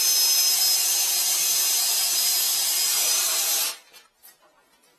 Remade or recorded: recorded